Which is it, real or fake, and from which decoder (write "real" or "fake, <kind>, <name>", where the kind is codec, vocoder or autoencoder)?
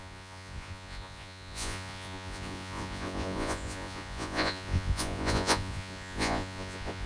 fake, vocoder, Vocos